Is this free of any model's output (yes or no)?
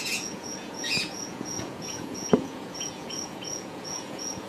no